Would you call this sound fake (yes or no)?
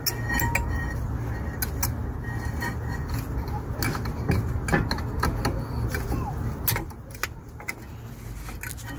no